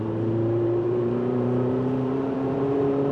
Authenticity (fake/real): fake